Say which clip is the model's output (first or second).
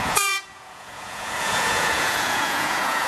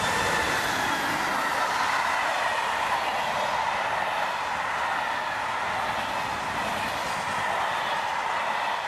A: first